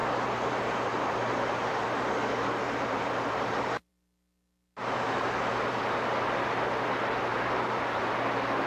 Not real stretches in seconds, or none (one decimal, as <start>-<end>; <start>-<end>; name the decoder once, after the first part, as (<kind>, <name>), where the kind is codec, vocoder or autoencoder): 0.0-1.7 (vocoder, BigVGAN v2); 2.6-3.9; 4.8-5.8; 7.3-8.1